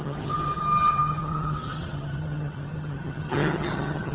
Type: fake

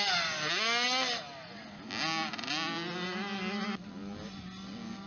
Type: real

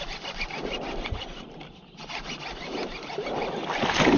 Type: real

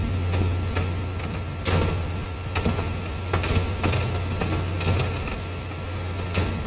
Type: real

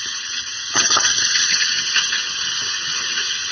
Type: fake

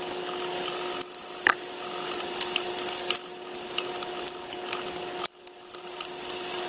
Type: real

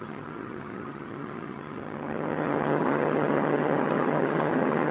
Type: fake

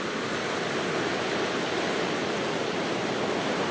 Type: real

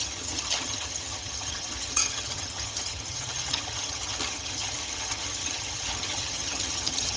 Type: fake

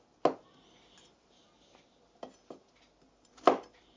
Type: real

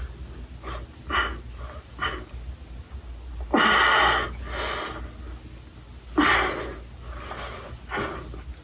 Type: real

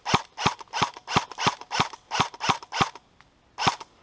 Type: real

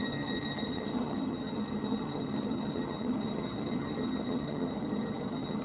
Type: fake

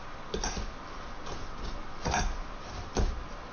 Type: real